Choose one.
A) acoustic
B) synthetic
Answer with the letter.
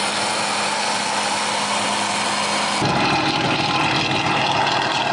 A